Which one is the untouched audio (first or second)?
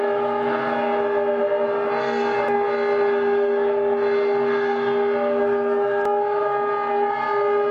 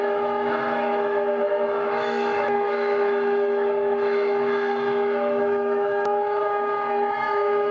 first